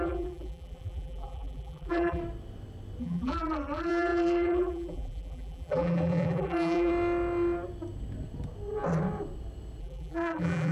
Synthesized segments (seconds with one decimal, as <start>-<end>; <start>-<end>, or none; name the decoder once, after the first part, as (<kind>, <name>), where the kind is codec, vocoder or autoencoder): 0.0-2.2 (vocoder, BigVGAN v2); 3.0-6.9; 9.8-10.7